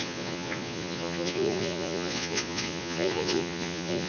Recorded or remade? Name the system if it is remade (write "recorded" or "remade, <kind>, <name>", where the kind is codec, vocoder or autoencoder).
remade, vocoder, Vocos